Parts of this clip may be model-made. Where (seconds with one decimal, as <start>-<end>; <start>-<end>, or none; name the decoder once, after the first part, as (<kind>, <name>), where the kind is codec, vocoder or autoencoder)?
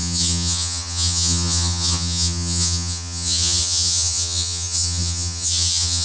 0.0-6.0 (vocoder, HiFi-GAN)